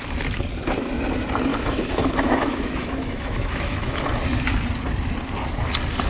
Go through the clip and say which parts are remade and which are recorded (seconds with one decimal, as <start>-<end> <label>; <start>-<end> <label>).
0.0-1.5 recorded; 1.5-4.2 remade; 4.2-6.1 recorded